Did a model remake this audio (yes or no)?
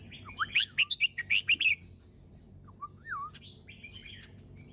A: no